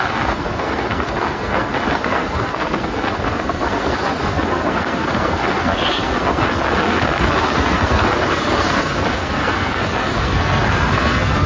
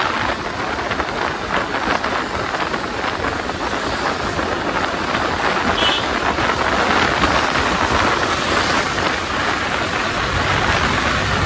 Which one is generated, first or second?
first